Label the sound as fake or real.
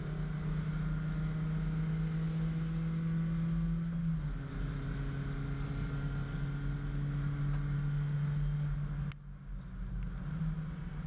real